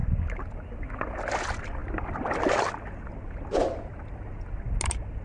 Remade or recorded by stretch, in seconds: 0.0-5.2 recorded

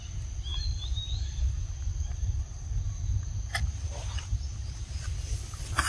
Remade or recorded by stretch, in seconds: 0.0-5.9 recorded

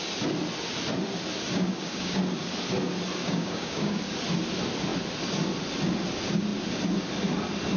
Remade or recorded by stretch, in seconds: 0.0-1.5 recorded; 1.5-2.2 remade; 2.2-3.2 recorded; 3.2-4.0 remade; 4.0-7.8 recorded